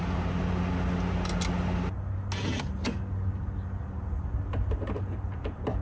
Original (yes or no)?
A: yes